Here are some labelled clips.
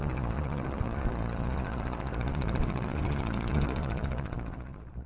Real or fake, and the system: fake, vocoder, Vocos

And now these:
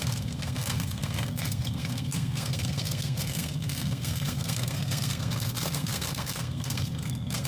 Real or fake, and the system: fake, codec, SNAC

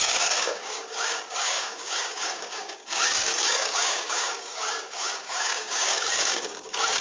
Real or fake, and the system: fake, codec, DAC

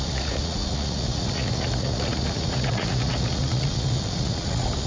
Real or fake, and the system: fake, vocoder, Vocos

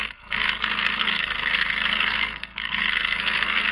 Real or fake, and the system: fake, codec, SNAC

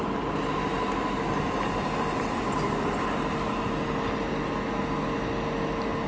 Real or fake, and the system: real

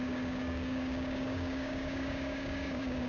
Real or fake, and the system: fake, codec, DAC